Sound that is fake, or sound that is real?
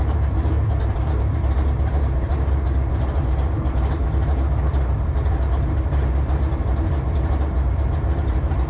fake